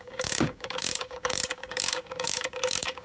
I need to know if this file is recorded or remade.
remade